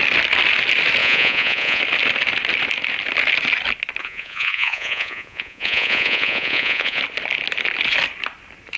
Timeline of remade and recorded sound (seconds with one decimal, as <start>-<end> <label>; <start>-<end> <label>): 0.0-1.0 recorded; 1.0-1.8 remade; 1.8-4.0 recorded; 4.0-7.0 remade; 7.0-8.8 recorded